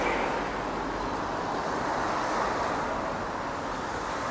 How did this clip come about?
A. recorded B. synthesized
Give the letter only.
A